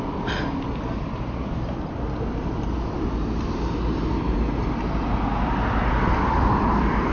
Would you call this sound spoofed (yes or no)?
no